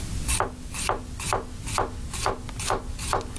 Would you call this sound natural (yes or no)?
yes